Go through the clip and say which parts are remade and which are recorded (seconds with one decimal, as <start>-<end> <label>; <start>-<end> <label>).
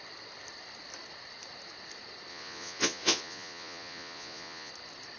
0.0-2.3 recorded; 2.3-4.7 remade; 4.7-5.2 recorded